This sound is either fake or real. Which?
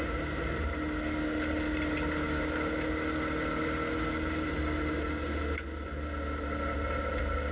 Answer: real